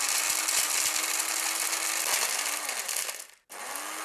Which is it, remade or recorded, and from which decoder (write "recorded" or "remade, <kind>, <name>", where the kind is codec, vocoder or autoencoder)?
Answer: recorded